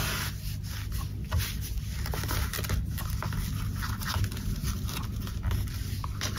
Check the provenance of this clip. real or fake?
real